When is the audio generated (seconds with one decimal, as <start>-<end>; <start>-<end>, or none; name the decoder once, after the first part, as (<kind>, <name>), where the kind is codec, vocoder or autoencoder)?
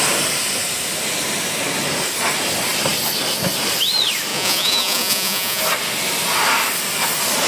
4.3-5.6 (vocoder, Vocos)